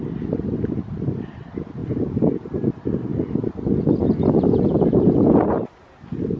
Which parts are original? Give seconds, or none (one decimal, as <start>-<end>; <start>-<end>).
0.0-6.4